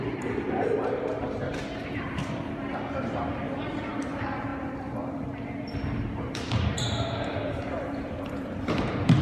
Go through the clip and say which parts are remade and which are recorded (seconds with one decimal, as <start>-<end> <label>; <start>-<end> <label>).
0.0-2.2 remade; 2.2-3.0 recorded; 3.0-9.2 remade